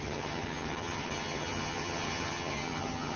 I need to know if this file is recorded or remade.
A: remade